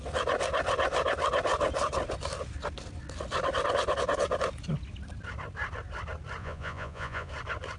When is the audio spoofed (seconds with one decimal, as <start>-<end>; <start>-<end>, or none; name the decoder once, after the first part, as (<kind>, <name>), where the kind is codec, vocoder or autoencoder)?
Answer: 6.4-7.3 (vocoder, Vocos)